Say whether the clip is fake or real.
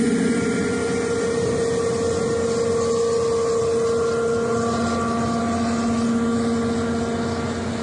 real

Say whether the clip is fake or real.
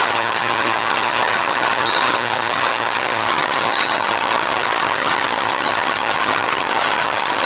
fake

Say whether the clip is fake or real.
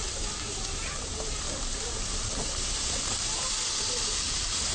fake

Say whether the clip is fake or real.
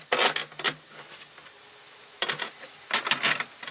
real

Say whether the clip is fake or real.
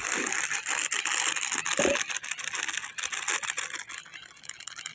real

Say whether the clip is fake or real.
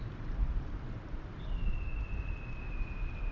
real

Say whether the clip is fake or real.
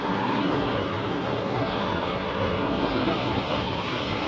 fake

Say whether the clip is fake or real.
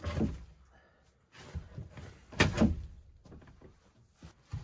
real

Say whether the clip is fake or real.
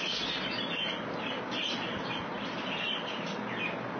real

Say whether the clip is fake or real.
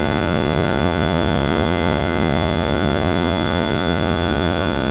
fake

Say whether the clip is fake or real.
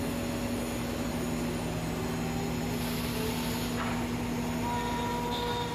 real